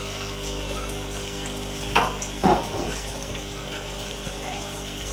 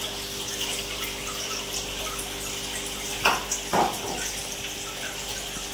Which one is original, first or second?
second